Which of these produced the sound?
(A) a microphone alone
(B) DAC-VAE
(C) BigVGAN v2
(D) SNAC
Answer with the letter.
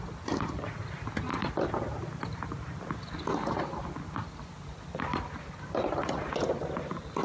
A